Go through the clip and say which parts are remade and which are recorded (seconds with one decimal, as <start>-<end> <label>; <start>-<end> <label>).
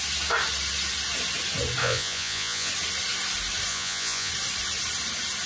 0.0-1.8 recorded; 1.8-2.7 remade; 2.7-3.7 recorded; 3.7-4.3 remade; 4.3-5.5 recorded